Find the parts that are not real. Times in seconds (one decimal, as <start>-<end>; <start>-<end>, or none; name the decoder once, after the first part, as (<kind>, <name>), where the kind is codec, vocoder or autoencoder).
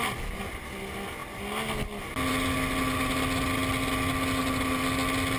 none